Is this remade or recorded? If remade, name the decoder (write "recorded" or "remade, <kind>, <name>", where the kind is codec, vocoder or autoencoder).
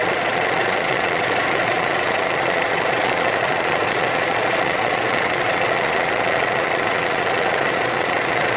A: remade, vocoder, Vocos